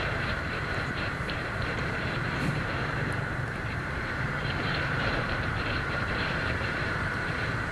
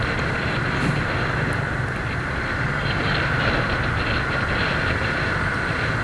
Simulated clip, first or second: first